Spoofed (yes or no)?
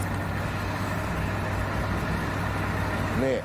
no